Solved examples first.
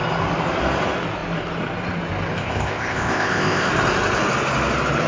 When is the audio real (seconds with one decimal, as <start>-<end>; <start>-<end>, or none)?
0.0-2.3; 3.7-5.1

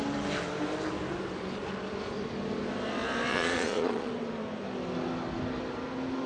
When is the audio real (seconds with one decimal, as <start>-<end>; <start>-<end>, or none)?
0.0-3.3; 4.1-6.3

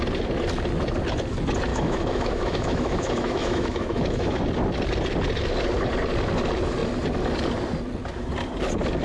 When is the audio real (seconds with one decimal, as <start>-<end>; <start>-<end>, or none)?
0.0-1.7; 4.4-9.0